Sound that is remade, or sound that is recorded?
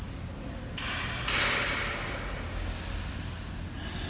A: recorded